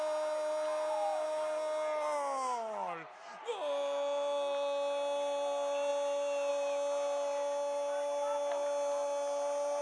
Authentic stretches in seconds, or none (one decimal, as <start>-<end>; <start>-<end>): 0.0-9.8